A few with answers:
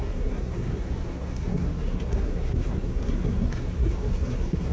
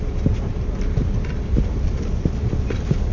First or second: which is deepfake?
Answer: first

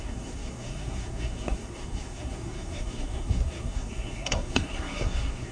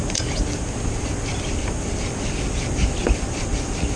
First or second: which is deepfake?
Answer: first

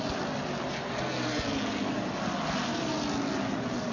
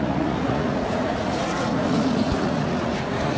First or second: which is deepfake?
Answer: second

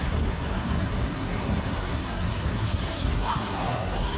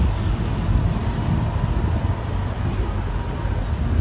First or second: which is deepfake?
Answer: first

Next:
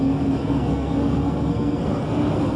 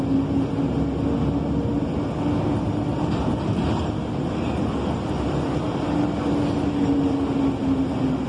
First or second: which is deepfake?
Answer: first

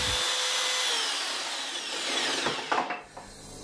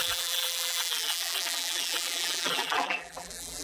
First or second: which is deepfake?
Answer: second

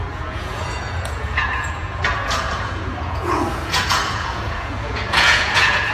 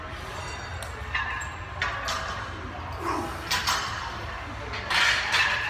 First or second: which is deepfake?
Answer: first